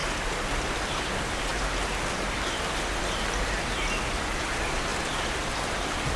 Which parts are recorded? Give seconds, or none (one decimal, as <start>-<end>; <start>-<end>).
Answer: 0.0-0.9; 1.5-4.5; 4.9-6.2